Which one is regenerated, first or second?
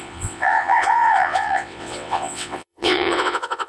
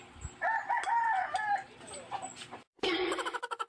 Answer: first